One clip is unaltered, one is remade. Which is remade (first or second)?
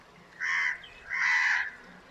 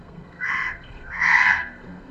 second